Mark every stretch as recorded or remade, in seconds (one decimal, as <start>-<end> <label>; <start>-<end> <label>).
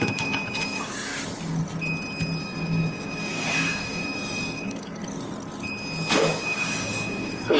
0.0-1.1 remade; 1.1-2.4 recorded; 2.4-5.0 remade; 5.0-6.3 recorded; 6.3-7.6 remade